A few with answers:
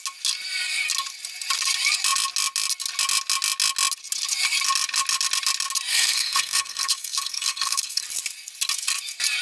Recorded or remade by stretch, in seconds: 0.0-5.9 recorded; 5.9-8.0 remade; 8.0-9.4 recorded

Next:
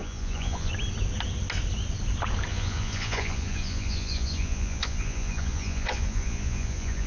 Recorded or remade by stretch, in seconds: 0.0-0.7 remade; 0.7-2.5 recorded; 2.5-7.1 remade

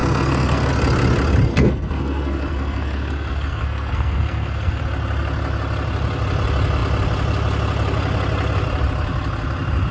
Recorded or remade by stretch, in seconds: 0.0-0.7 remade; 0.7-1.5 recorded; 1.5-4.8 remade; 4.8-9.9 recorded